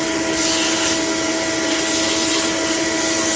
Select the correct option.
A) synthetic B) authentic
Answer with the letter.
B